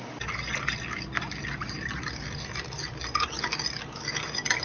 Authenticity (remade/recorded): recorded